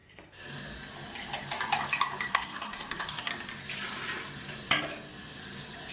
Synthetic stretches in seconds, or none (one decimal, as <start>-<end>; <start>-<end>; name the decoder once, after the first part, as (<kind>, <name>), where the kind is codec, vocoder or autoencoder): 2.3-3.3 (codec, SNAC)